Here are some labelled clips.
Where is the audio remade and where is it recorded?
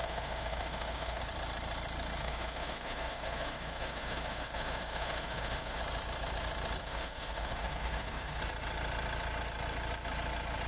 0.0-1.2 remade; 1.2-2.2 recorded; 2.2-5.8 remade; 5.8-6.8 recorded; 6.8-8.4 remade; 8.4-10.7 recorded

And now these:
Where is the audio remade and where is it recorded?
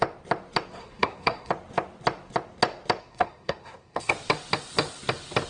0.0-0.8 recorded; 0.8-1.5 remade; 1.5-3.0 recorded; 3.0-4.1 remade; 4.1-5.5 recorded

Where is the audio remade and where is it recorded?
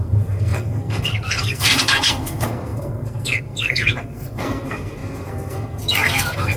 0.0-6.6 remade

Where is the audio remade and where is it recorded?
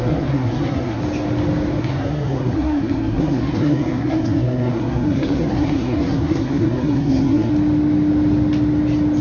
0.0-1.0 remade; 1.0-1.8 recorded; 1.8-7.5 remade; 7.5-9.2 recorded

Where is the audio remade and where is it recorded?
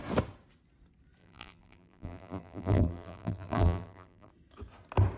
0.0-1.2 recorded; 1.2-4.3 remade; 4.3-5.2 recorded